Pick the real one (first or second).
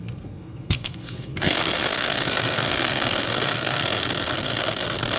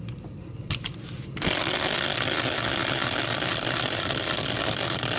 second